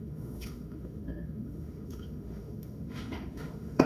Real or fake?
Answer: fake